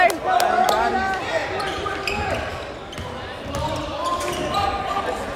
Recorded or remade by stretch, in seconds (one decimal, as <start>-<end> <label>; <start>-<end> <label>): 0.0-1.4 recorded; 1.4-2.5 remade; 2.5-3.8 recorded; 3.8-5.0 remade; 5.0-5.4 recorded